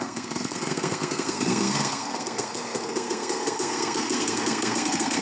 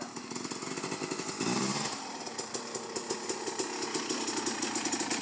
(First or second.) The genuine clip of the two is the second